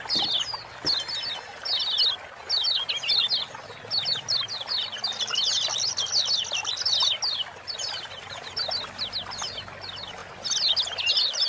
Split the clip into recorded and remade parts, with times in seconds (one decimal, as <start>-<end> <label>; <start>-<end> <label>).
0.0-11.5 recorded